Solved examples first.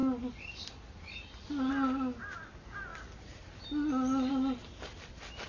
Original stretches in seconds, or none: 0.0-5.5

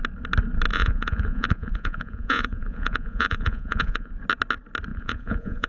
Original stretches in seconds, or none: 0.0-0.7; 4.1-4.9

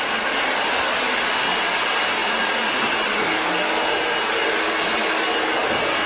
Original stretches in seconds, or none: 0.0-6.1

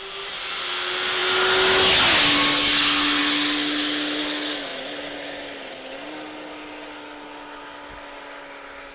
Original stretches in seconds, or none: 0.0-8.9

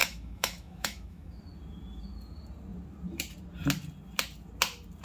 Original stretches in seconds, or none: 1.4-5.0